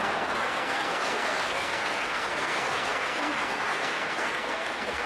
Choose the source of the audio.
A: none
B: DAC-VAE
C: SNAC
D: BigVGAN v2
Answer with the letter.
C